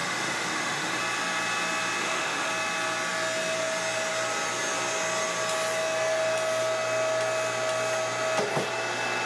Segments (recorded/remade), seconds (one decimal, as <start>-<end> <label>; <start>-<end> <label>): 0.0-1.0 remade; 1.0-2.0 recorded; 2.0-2.5 remade; 2.5-9.3 recorded

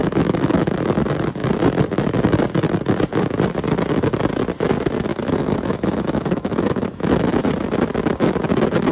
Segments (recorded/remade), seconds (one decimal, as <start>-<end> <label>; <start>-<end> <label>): 0.0-0.7 remade; 0.7-5.1 recorded; 5.1-7.4 remade; 7.4-8.9 recorded

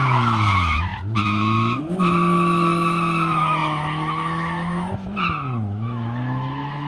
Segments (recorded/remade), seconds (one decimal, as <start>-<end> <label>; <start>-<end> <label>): 0.0-6.9 remade

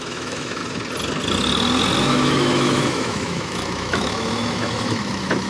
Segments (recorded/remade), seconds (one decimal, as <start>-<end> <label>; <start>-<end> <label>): 0.0-0.6 remade; 0.6-2.0 recorded; 2.0-5.5 remade

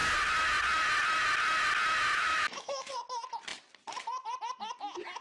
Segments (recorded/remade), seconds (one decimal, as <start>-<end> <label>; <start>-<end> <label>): 0.0-2.1 recorded; 2.1-2.9 remade; 2.9-5.2 recorded

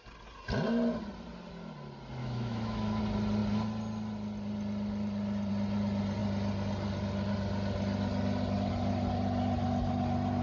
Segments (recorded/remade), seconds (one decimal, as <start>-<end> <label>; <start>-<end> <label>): 0.0-2.2 recorded; 2.2-3.0 remade; 3.0-10.4 recorded

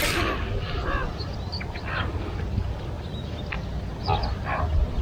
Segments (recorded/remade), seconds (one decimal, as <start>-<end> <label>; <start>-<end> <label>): 0.0-5.0 recorded